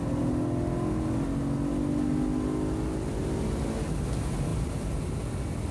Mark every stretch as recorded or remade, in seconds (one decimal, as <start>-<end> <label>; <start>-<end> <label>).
0.0-5.7 recorded